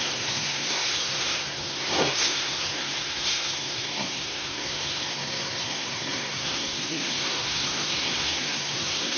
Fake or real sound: fake